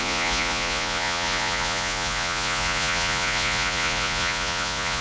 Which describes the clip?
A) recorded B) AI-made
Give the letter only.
B